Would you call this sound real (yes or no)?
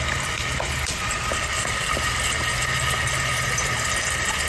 yes